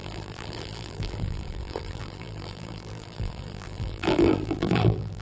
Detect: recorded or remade remade